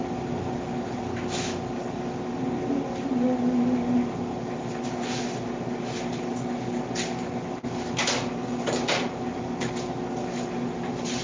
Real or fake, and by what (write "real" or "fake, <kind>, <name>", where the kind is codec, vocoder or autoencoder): real